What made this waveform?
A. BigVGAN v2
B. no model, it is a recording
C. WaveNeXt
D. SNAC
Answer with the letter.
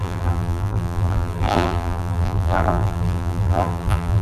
A